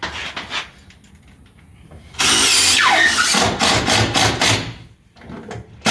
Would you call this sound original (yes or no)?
yes